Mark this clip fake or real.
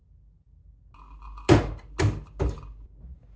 real